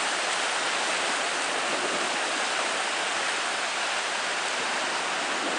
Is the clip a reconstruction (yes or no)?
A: no